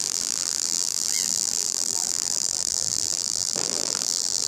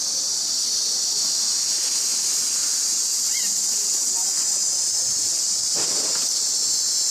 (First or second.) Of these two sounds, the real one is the second